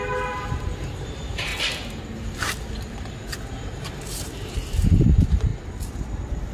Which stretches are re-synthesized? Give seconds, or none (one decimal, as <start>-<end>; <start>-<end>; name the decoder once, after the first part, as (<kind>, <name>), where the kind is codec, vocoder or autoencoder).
0.0-1.5 (vocoder, BigVGAN v2); 2.2-5.5